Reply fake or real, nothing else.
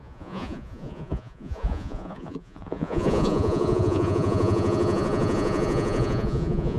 fake